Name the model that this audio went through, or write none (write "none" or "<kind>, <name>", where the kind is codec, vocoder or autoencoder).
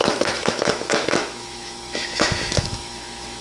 autoencoder, DAC-VAE